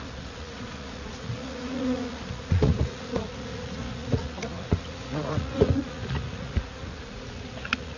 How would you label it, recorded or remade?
remade